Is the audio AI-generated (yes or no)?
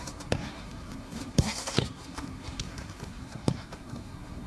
yes